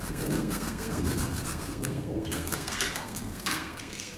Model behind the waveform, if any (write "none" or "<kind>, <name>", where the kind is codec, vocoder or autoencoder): codec, SNAC